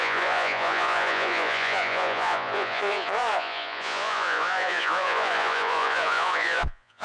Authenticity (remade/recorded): remade